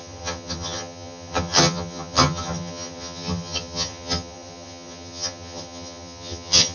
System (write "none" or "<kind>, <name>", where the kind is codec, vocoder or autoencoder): vocoder, HiFi-GAN